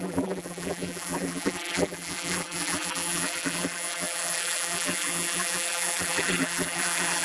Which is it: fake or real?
fake